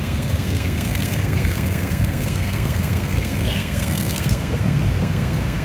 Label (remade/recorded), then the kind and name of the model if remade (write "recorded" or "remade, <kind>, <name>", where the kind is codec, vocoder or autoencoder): remade, codec, SNAC